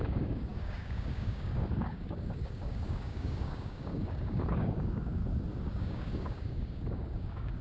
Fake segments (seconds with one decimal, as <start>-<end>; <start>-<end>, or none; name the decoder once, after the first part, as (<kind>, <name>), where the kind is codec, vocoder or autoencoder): 0.0-5.2 (codec, DAC); 5.7-7.6